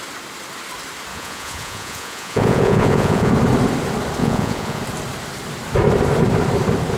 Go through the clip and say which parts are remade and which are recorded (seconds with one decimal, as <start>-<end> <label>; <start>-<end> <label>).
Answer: 0.0-1.1 recorded; 1.1-3.3 remade; 3.3-4.2 recorded; 4.2-4.8 remade; 4.8-7.0 recorded